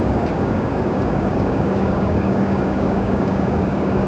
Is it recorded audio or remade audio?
remade